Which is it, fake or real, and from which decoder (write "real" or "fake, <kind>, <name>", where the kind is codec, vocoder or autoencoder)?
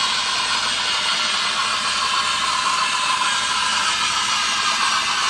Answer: real